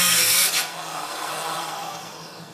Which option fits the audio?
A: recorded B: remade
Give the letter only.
B